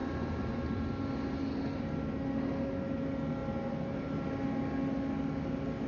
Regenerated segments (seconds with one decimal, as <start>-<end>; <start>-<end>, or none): 0.0-0.7; 3.4-4.3